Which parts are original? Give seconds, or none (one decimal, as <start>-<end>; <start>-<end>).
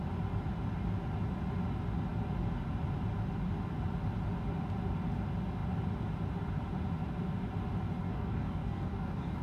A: 0.0-8.0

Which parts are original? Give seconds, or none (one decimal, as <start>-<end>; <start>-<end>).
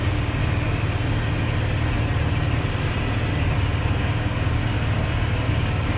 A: 0.4-4.0; 4.6-5.5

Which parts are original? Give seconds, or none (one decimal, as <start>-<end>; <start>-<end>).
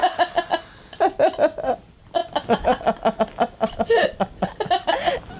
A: 0.0-5.4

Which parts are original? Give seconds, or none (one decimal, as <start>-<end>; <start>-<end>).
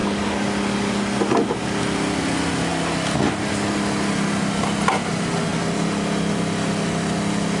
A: 1.0-7.6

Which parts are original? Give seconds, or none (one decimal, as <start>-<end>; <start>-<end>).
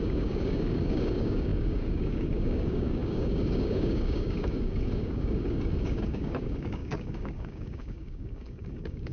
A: none